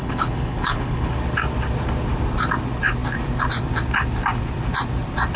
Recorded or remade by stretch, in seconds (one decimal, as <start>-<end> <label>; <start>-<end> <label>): 0.0-1.1 remade; 1.1-5.4 recorded